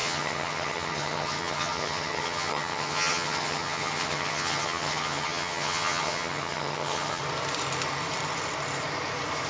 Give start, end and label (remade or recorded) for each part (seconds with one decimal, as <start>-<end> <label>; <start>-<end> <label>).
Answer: 0.0-7.2 remade; 7.2-9.5 recorded